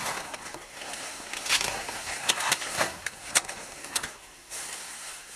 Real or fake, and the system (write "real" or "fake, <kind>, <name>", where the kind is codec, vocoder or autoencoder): fake, codec, SNAC